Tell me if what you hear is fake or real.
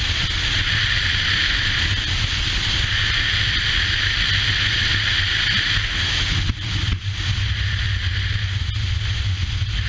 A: real